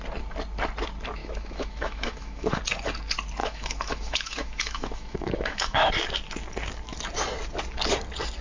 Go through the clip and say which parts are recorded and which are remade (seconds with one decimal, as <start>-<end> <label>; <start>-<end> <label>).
0.0-1.2 recorded; 1.2-2.6 remade; 2.6-3.4 recorded; 3.4-5.9 remade; 5.9-8.4 recorded